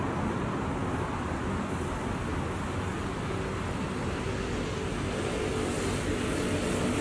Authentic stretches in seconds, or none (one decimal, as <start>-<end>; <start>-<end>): 0.0-7.0